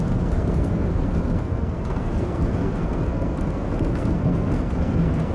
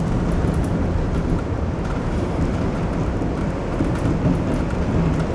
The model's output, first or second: first